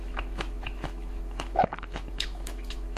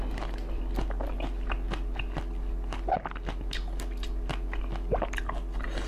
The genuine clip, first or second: second